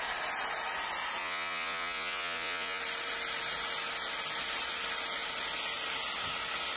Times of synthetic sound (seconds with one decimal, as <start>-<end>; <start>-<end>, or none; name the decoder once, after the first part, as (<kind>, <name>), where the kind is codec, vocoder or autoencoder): 1.2-2.8 (vocoder, Vocos)